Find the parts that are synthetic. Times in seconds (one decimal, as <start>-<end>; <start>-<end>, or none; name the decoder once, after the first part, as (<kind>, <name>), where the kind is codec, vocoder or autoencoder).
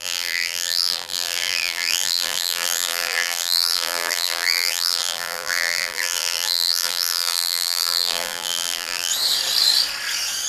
0.0-9.1 (vocoder, BigVGAN v2)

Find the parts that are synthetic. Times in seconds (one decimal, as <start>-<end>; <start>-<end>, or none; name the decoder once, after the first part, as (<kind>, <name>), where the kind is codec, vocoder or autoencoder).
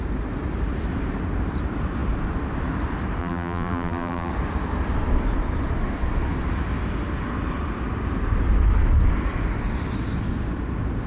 3.2-4.3 (vocoder, BigVGAN v2)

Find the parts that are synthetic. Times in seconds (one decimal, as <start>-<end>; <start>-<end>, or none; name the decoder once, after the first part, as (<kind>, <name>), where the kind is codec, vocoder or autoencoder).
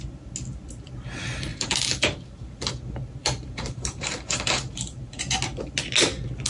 1.5-2.7 (vocoder, BigVGAN v2); 3.2-5.4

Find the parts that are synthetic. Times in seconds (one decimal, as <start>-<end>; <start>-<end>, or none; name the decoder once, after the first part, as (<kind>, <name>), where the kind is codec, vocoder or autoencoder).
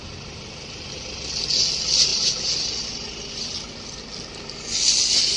none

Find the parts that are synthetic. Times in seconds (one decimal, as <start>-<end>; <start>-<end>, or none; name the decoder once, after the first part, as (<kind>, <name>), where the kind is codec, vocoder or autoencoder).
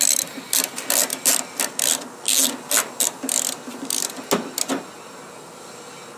1.1-1.7 (vocoder, BigVGAN v2)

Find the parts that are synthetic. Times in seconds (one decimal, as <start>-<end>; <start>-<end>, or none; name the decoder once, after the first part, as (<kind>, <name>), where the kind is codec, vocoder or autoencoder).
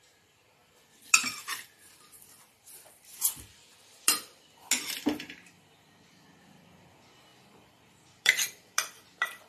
0.6-4.7 (vocoder, BigVGAN v2); 7.3-9.5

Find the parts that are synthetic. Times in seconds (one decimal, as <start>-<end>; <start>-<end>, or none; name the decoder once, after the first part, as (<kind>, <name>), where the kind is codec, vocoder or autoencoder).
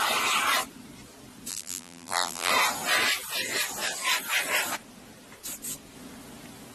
1.5-2.5 (vocoder, BigVGAN v2)